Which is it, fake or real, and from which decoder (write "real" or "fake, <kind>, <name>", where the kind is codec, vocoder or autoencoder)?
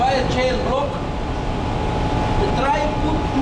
real